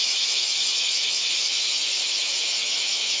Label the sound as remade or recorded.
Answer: remade